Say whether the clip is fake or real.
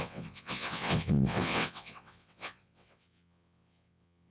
fake